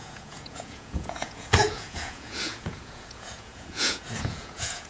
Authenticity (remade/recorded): remade